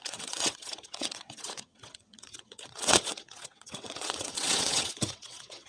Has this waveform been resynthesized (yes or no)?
yes